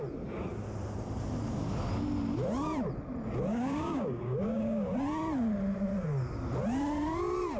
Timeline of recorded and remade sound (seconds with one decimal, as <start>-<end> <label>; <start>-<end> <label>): 0.0-3.5 recorded; 3.5-4.9 remade; 4.9-7.6 recorded